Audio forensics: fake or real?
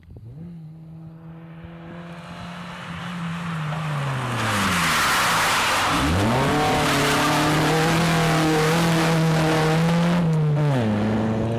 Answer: real